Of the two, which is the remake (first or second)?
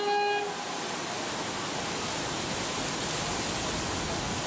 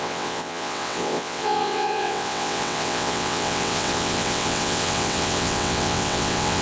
second